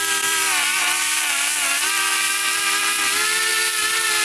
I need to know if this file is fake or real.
fake